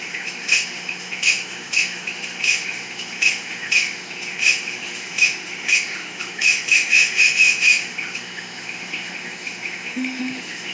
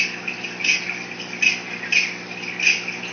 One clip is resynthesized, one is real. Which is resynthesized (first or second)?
first